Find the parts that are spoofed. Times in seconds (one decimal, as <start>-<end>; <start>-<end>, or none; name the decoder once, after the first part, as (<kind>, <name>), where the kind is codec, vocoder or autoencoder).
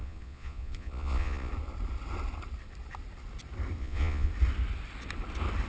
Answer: 0.0-1.5 (vocoder, Vocos); 3.8-4.3